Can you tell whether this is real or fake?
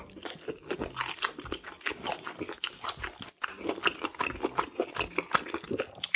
real